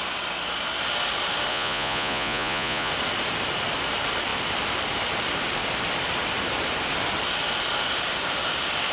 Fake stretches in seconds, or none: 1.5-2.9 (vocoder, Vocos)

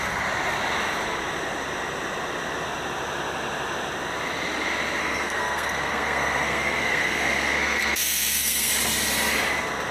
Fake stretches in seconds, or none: 5.0-8.7 (codec, SNAC)

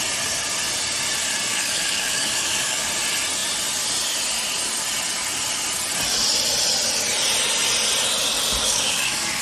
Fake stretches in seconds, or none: 1.5-2.9 (codec, DAC); 8.6-9.4

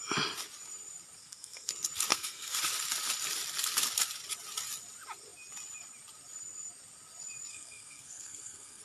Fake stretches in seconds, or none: 1.2-1.7 (codec, SNAC); 2.1-2.6; 7.5-8.8